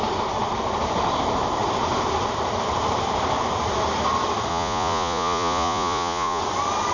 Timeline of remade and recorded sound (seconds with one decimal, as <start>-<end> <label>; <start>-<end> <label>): 0.0-4.5 recorded; 4.5-6.4 remade; 6.4-6.9 recorded